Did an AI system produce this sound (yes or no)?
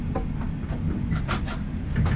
no